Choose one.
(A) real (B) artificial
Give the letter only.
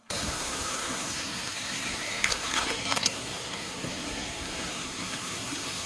B